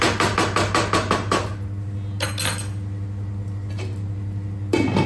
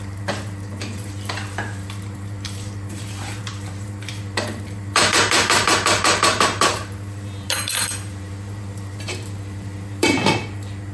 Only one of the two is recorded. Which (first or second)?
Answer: first